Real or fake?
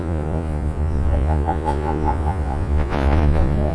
fake